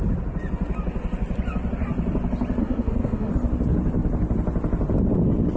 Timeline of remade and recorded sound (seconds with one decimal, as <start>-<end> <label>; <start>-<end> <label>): 0.0-2.6 recorded; 2.6-3.3 remade; 3.3-5.6 recorded